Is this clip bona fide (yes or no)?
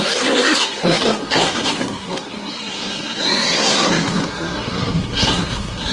no